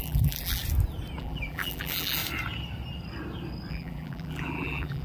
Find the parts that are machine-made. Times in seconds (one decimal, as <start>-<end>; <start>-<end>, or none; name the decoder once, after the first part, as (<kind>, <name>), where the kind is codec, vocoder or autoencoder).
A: 0.0-0.6 (vocoder, BigVGAN v2); 1.2-2.2; 3.7-5.0